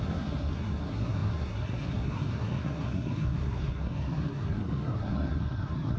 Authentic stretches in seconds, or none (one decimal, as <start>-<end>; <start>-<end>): none